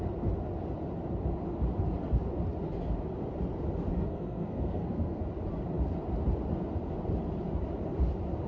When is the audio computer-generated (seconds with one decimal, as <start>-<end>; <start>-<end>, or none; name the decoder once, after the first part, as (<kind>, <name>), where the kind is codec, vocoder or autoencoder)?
3.9-5.2 (codec, SNAC)